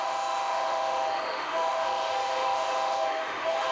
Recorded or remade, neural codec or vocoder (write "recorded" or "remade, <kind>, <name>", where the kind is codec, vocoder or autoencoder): remade, autoencoder, DAC-VAE